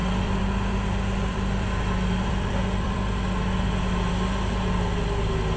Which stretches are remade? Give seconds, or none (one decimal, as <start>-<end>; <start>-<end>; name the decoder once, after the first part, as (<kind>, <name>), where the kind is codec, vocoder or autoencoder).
0.0-3.2 (vocoder, BigVGAN v2)